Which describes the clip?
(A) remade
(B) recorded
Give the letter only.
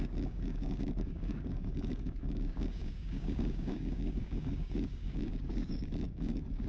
A